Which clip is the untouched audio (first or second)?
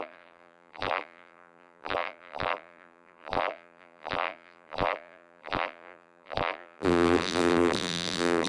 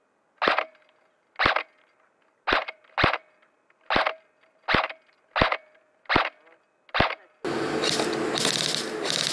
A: second